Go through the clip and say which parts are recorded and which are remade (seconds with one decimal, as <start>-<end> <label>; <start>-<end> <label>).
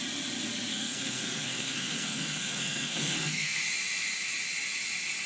0.0-0.7 recorded; 0.7-3.6 remade; 3.6-5.3 recorded